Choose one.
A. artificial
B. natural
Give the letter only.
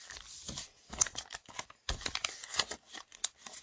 B